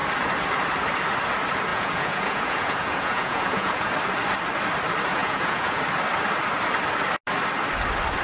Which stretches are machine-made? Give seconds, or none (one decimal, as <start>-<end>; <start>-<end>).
1.7-3.9; 5.2-5.8